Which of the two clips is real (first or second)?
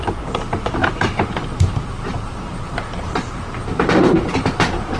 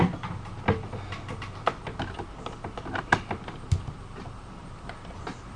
second